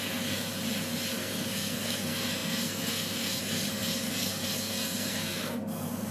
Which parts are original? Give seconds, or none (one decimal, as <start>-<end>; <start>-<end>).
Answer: 0.5-1.1